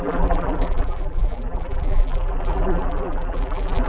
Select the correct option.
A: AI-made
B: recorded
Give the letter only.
A